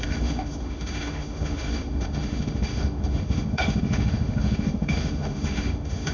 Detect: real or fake fake